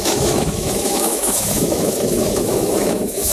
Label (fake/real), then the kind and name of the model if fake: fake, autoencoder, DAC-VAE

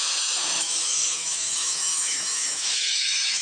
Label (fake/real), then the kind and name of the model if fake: fake, autoencoder, DAC-VAE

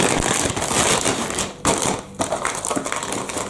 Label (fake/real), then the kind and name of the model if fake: real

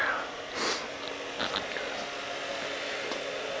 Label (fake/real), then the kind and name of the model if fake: real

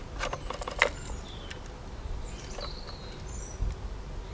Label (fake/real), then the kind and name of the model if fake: real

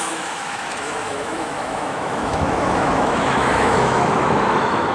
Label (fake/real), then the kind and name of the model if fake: fake, autoencoder, DAC-VAE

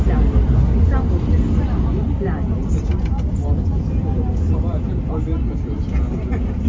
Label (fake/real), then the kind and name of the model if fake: real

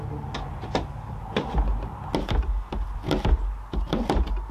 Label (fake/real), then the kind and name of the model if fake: real